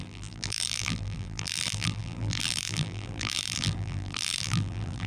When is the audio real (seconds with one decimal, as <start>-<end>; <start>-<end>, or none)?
none